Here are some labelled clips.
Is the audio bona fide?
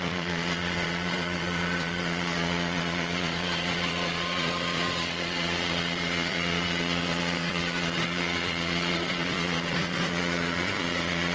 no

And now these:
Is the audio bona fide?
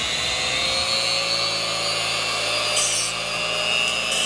yes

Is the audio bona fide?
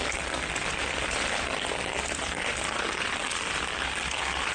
no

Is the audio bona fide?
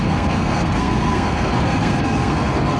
no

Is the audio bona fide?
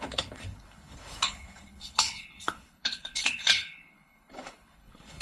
no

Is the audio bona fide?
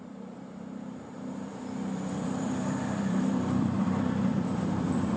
no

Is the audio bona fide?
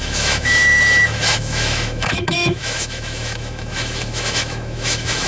no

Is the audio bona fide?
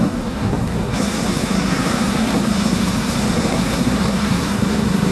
no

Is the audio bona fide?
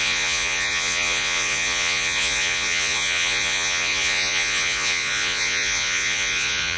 no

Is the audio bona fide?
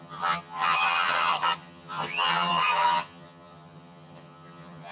no